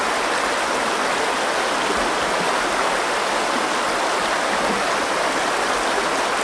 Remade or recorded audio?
recorded